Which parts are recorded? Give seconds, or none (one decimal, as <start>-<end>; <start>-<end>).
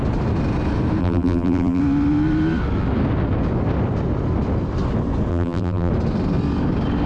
0.0-1.0; 1.8-5.3; 5.9-7.1